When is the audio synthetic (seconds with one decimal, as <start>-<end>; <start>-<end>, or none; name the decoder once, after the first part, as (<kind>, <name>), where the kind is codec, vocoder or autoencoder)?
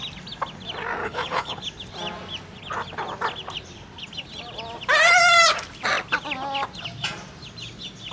1.0-1.6 (codec, HILCodec)